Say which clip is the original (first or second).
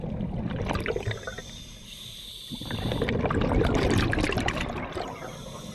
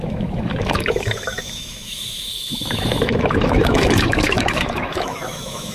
first